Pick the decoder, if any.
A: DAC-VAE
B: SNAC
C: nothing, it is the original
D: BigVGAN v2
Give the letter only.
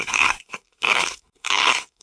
B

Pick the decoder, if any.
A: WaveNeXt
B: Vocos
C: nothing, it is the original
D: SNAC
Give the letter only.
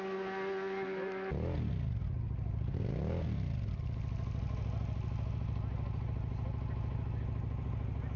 C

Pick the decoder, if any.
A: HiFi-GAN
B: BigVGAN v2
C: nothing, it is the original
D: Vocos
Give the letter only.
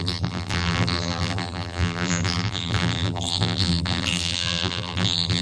B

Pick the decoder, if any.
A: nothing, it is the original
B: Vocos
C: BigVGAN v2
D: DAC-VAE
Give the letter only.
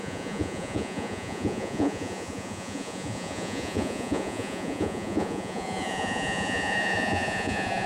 B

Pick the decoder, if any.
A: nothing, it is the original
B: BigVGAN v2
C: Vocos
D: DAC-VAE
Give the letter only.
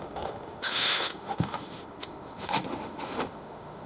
D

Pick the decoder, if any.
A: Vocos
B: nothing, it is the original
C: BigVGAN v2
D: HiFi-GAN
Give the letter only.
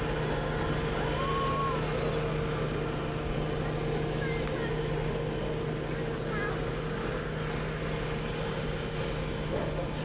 B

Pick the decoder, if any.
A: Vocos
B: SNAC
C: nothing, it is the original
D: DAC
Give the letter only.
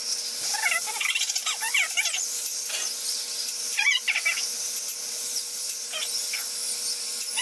C